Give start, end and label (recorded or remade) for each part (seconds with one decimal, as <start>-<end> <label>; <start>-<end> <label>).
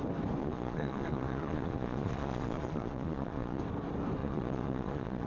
0.0-0.4 recorded; 0.4-3.6 remade; 3.6-4.2 recorded; 4.2-5.3 remade